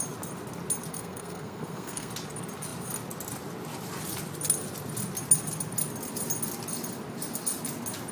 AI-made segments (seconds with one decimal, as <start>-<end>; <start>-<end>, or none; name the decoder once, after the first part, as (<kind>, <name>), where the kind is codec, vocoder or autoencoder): 0.9-2.1 (codec, SNAC)